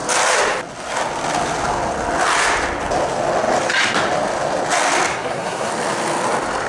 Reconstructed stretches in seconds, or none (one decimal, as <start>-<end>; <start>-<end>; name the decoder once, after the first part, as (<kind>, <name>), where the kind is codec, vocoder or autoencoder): 5.1-5.7 (codec, SNAC)